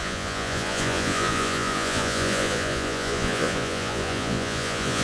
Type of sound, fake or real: fake